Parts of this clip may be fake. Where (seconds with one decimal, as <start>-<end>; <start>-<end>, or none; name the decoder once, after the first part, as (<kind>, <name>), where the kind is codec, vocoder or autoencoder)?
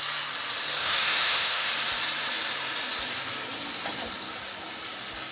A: 0.8-1.7 (autoencoder, DAC-VAE)